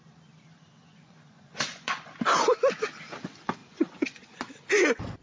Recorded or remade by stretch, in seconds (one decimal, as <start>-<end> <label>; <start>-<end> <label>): 0.0-0.9 recorded; 0.9-2.0 remade; 2.0-3.6 recorded; 3.6-4.4 remade; 4.4-5.2 recorded